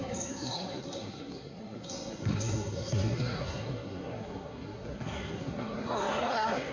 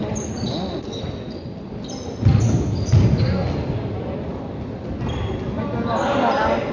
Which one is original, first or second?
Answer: second